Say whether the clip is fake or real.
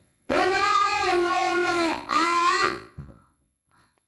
fake